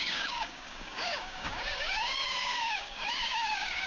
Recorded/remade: remade